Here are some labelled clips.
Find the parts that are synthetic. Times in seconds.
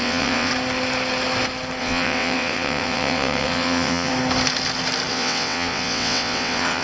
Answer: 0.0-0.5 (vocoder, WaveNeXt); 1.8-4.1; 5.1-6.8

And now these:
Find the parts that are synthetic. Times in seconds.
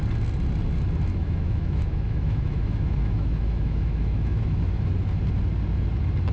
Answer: 1.1-4.9 (autoencoder, DAC-VAE)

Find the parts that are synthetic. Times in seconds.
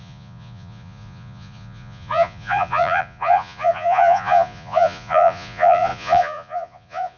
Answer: 0.0-7.2 (vocoder, Vocos)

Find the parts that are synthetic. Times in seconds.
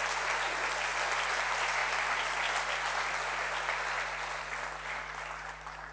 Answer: none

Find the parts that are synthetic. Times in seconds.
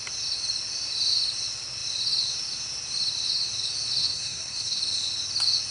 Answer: 4.0-4.8 (codec, SNAC)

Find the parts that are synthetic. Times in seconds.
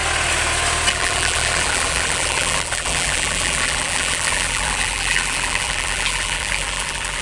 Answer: 0.9-7.2 (vocoder, BigVGAN v2)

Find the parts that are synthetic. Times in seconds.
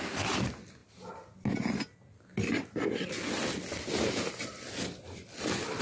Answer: none